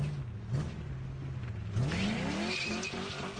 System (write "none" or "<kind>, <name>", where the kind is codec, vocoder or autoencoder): none